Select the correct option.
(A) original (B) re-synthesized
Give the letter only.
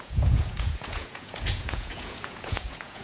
B